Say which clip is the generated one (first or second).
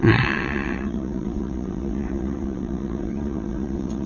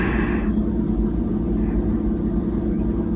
first